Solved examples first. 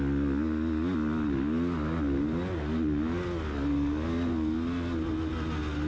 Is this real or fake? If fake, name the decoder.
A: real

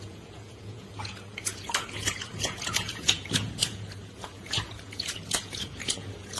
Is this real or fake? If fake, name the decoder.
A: fake, vocoder, Vocos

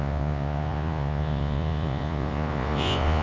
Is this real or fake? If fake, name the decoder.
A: fake, vocoder, Vocos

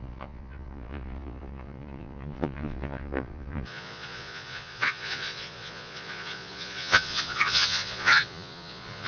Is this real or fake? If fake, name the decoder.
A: fake, vocoder, Vocos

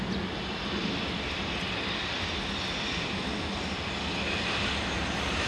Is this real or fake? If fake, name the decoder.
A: real